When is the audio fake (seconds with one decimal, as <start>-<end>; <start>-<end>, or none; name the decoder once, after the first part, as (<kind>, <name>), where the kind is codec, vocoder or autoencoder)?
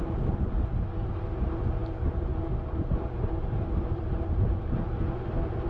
none